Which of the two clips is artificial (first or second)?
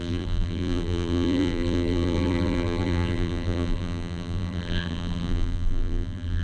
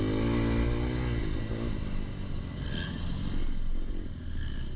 first